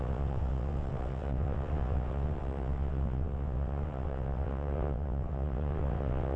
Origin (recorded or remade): remade